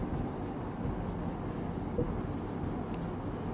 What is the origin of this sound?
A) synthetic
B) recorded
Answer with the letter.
B